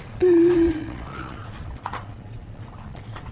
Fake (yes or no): yes